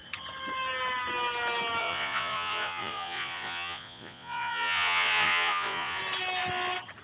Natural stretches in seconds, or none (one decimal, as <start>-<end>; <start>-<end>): 0.0-1.8; 6.0-7.0